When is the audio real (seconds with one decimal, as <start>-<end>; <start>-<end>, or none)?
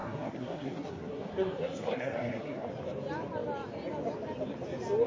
2.7-5.1